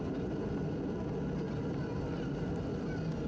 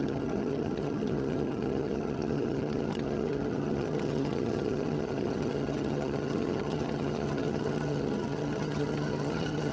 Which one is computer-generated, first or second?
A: second